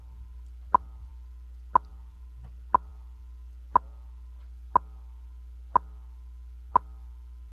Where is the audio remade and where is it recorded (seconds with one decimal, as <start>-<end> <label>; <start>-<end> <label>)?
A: 0.0-7.5 recorded